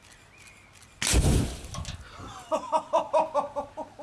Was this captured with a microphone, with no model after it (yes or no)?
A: yes